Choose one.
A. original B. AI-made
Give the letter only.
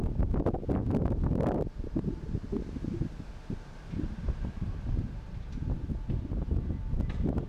B